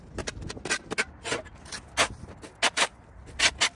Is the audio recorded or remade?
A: recorded